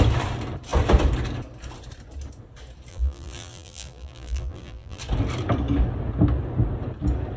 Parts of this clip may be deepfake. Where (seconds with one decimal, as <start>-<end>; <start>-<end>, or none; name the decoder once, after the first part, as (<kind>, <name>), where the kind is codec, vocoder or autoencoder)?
2.9-5.0 (vocoder, BigVGAN v2)